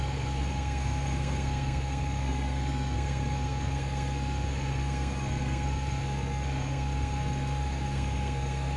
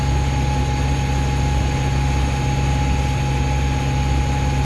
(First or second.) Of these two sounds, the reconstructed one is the first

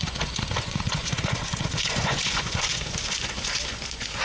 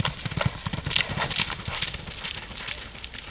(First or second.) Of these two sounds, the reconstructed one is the first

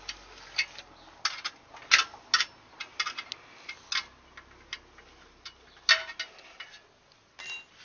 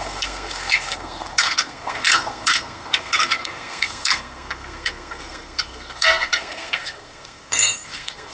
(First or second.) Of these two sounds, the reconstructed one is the second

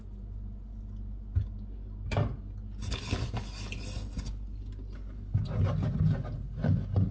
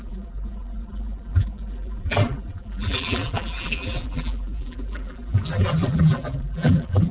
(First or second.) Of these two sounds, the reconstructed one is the second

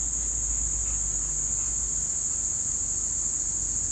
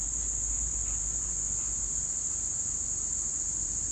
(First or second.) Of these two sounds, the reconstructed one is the second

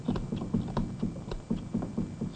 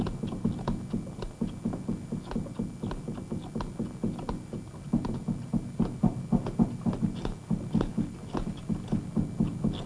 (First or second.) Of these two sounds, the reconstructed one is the first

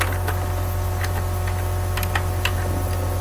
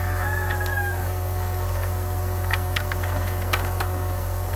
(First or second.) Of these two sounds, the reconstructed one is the second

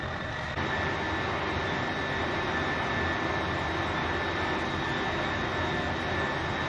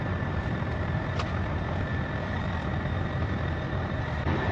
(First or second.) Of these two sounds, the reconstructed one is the second